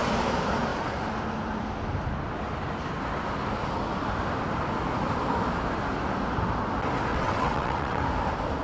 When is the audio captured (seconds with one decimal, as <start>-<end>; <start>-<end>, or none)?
0.0-7.1; 8.0-8.6